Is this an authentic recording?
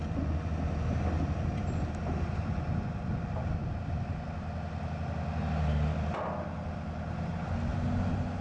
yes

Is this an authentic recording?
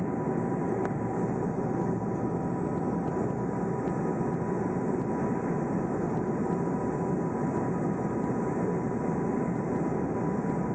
yes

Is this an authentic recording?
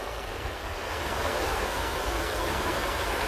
no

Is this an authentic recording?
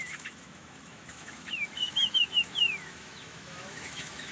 no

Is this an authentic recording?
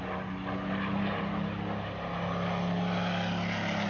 yes